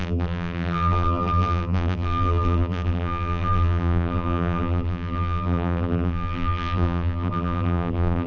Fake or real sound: fake